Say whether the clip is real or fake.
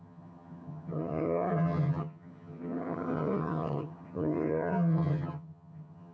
fake